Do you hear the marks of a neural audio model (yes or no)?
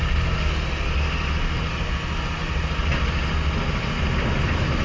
no